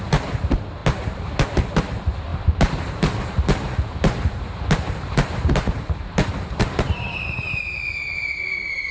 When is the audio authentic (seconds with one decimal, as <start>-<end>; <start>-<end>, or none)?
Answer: 0.8-1.8